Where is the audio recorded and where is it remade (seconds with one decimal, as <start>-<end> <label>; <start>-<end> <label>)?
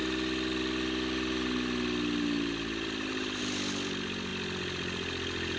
0.0-5.6 recorded